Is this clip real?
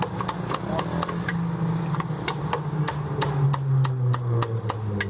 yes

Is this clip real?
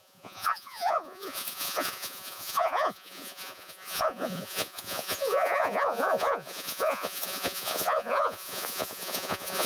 no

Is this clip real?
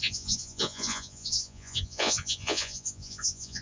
no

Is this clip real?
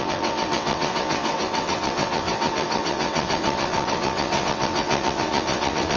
no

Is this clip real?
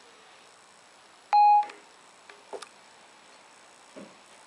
yes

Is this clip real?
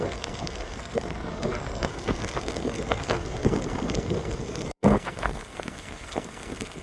no